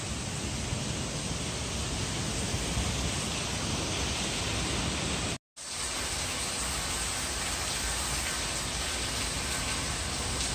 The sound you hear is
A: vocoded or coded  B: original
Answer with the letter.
B